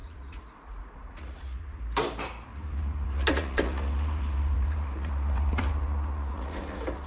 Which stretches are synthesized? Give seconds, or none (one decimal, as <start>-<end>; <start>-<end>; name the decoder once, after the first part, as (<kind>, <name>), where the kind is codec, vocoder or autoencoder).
0.0-1.8 (vocoder, Vocos); 2.5-7.1